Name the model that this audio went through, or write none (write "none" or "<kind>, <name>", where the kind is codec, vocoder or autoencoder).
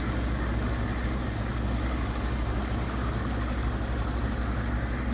none